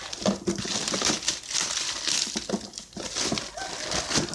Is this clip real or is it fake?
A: real